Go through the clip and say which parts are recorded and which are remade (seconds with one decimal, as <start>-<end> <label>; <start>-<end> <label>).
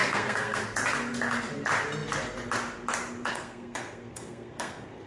0.0-0.6 remade; 0.6-3.3 recorded; 3.3-5.1 remade